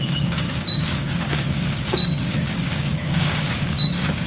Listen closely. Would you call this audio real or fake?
fake